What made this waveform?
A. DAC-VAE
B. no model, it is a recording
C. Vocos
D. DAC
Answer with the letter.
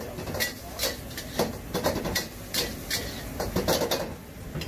B